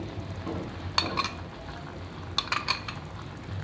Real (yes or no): yes